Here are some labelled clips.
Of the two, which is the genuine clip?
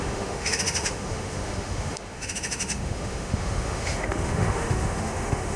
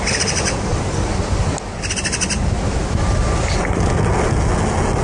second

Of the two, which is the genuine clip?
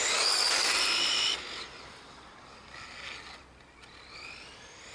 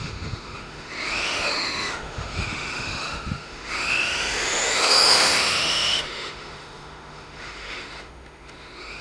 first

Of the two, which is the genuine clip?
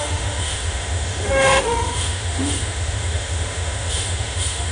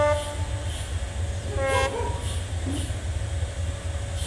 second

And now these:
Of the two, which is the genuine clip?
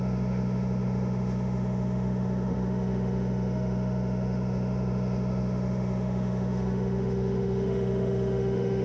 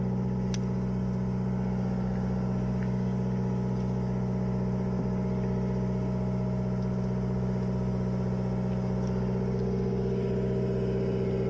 second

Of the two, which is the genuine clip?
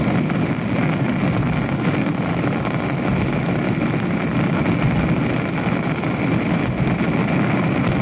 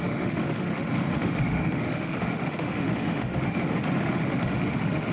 first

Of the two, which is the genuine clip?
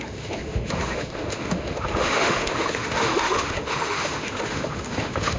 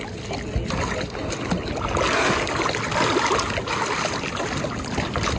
second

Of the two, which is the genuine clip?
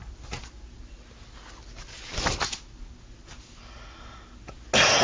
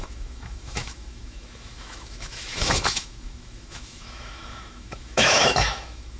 first